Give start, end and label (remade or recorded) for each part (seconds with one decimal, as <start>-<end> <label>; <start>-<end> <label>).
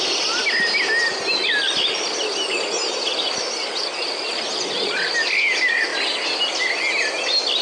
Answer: 0.0-7.6 recorded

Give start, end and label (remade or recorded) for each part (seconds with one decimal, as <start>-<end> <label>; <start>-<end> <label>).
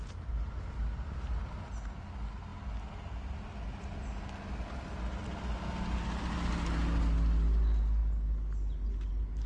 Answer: 0.0-9.5 recorded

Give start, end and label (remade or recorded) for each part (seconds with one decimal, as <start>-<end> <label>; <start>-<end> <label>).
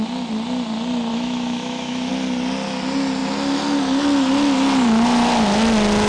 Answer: 0.0-1.1 recorded; 1.1-2.1 remade; 2.1-6.1 recorded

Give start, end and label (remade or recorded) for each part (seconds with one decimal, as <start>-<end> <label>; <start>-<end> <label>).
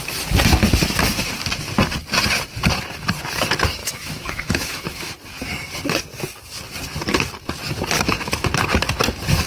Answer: 0.0-3.8 recorded; 3.8-5.1 remade; 5.1-9.5 recorded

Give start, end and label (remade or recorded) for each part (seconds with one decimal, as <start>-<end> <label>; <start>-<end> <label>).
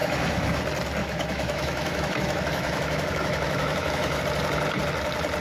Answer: 0.0-0.6 remade; 0.6-1.0 recorded; 1.0-4.2 remade; 4.2-5.4 recorded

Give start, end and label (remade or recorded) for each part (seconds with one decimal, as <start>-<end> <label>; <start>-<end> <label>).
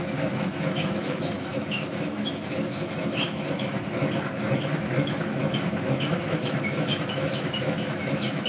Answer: 0.0-8.5 remade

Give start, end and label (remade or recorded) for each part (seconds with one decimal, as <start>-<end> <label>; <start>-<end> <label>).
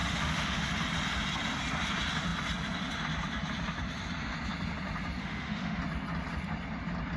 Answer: 0.0-0.7 remade; 0.7-5.2 recorded; 5.2-5.8 remade; 5.8-7.2 recorded